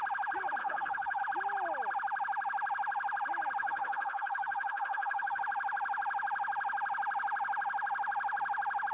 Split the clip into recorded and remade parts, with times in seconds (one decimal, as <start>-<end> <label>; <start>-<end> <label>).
0.0-0.6 recorded; 0.6-1.2 remade; 1.2-3.6 recorded; 3.6-5.4 remade; 5.4-8.9 recorded